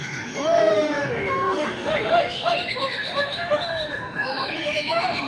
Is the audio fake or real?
fake